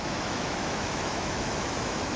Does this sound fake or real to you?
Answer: fake